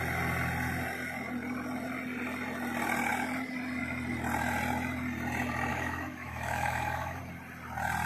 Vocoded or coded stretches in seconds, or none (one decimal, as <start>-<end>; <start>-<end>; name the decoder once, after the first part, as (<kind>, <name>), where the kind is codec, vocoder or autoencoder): 5.7-7.2 (autoencoder, DAC-VAE)